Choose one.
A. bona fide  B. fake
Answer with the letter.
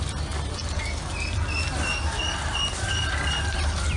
A